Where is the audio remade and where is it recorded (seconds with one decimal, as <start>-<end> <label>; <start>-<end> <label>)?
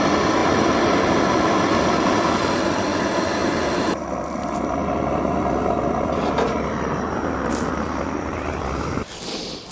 0.0-0.4 recorded; 0.4-1.0 remade; 1.0-9.7 recorded